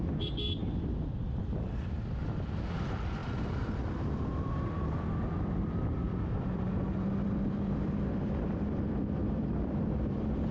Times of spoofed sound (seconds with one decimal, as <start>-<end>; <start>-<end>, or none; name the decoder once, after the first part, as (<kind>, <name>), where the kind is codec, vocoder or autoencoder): 0.0-0.6 (vocoder, BigVGAN v2); 1.4-10.5